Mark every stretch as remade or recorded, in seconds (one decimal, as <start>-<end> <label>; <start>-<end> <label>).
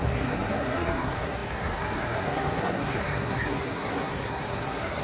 0.0-5.0 remade